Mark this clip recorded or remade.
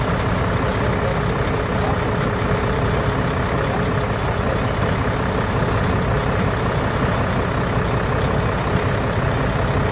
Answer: recorded